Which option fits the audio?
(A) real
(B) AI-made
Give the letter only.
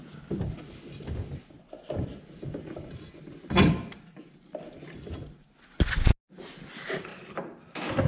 A